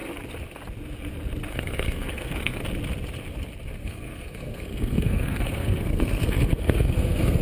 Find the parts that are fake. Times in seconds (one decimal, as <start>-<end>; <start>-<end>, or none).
1.5-2.6; 3.8-7.4